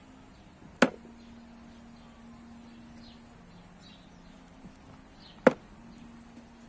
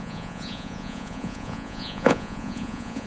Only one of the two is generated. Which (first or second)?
second